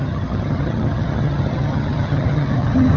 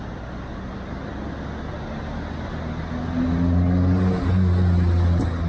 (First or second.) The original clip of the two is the second